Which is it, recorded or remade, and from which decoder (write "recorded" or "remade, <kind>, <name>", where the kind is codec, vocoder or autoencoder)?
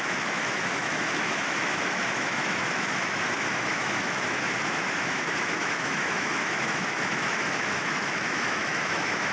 remade, autoencoder, DAC-VAE